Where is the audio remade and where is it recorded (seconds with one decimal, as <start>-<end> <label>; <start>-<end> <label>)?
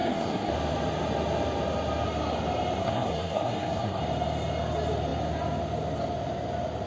0.0-0.5 remade; 0.5-2.8 recorded; 2.8-4.0 remade; 4.0-6.9 recorded